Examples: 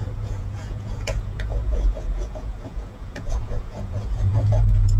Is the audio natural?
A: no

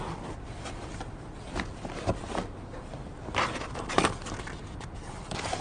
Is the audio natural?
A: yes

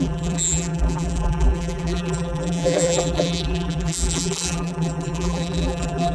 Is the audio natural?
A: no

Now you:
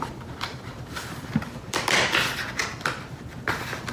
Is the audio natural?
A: no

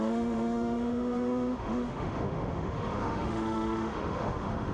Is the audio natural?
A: no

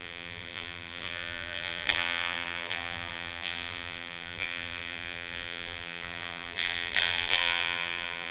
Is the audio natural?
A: no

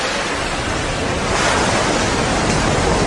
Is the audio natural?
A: yes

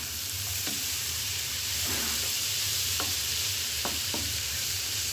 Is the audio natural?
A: no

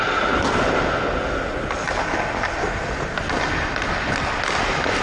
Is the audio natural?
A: yes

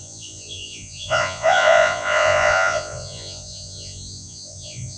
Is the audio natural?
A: no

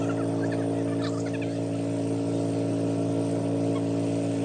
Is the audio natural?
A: yes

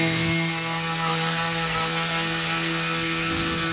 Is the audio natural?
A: no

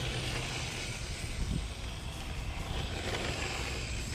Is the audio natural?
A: yes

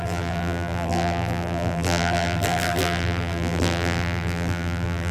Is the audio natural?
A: no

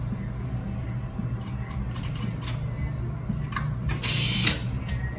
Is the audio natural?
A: yes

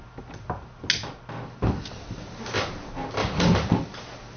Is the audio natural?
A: yes